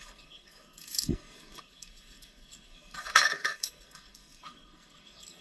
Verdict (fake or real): fake